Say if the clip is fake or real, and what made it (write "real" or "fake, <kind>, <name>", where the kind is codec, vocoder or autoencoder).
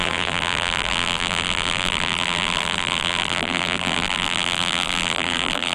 fake, vocoder, BigVGAN v2